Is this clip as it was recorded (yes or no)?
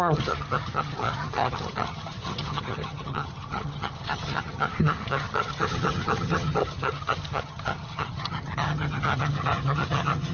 no